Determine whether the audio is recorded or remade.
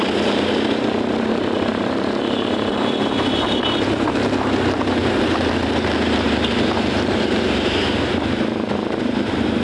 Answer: remade